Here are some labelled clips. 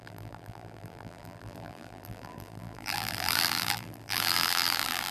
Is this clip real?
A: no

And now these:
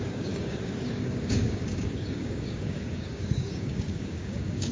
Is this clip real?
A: no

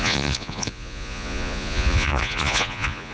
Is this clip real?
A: no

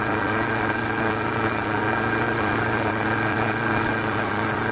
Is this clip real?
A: no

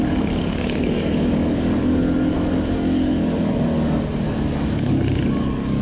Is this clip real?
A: no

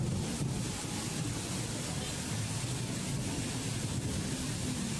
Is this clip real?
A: yes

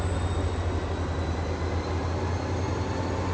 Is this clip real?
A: yes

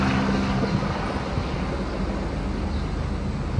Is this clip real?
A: yes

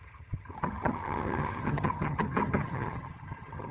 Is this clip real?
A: no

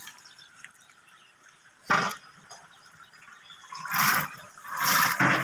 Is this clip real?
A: yes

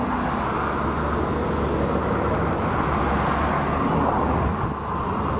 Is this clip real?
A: yes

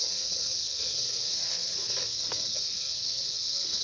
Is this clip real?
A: no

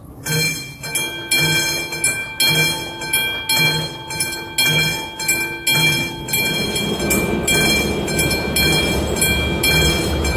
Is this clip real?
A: yes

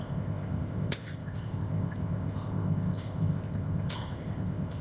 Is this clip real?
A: no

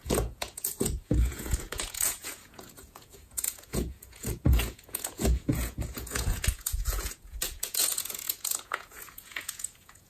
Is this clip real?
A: no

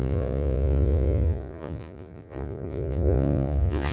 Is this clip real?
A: no